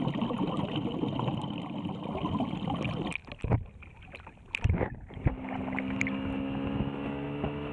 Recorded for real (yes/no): yes